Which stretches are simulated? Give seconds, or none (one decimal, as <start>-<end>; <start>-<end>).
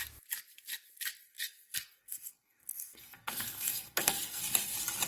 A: 1.3-4.4